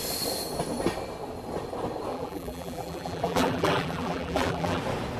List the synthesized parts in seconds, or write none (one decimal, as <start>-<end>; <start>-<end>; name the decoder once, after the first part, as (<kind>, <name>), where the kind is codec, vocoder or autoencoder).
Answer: 2.1-4.8 (vocoder, BigVGAN v2)